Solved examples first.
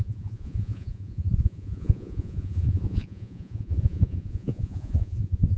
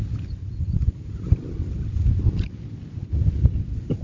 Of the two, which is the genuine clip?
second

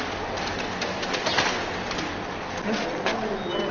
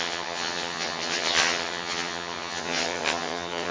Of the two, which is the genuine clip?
first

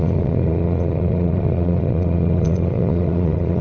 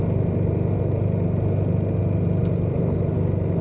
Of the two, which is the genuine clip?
second